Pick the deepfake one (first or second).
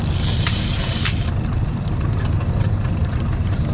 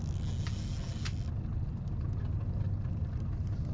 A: first